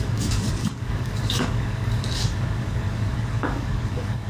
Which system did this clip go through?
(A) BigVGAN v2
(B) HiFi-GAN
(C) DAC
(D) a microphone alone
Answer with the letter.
C